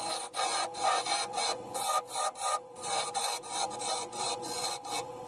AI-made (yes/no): yes